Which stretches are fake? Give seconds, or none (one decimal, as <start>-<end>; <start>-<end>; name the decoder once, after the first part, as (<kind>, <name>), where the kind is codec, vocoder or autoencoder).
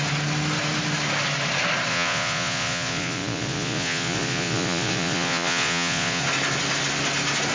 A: 1.9-6.2 (vocoder, Vocos)